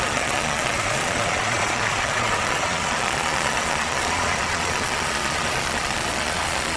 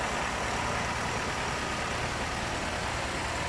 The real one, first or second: second